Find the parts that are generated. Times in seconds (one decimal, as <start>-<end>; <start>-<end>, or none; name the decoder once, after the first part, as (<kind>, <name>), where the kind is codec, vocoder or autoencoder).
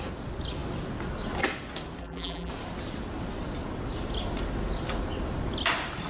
2.0-2.5 (vocoder, BigVGAN v2)